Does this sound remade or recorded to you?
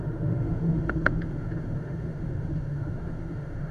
remade